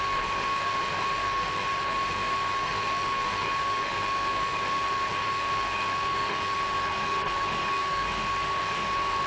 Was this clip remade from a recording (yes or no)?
yes